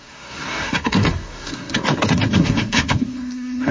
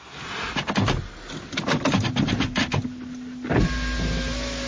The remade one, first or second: first